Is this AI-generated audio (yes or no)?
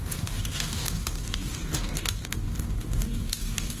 yes